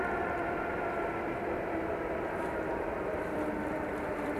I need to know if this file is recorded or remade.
remade